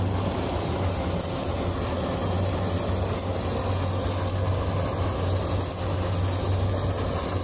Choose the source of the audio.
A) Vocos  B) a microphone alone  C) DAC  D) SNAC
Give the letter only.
B